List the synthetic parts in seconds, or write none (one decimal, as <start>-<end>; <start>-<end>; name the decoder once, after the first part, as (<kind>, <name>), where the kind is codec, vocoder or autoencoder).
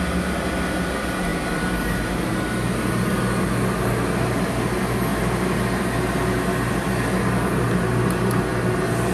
none